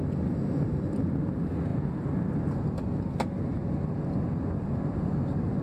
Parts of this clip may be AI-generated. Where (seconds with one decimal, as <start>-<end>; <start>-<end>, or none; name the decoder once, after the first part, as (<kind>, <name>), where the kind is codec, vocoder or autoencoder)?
none